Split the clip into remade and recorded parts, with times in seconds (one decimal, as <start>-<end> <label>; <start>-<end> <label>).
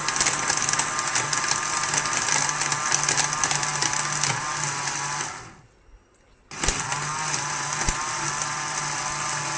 0.0-9.6 recorded